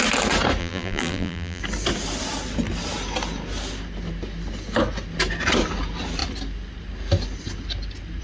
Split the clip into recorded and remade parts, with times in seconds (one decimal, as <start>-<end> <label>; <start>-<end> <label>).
0.0-0.6 recorded; 0.6-1.6 remade; 1.6-8.2 recorded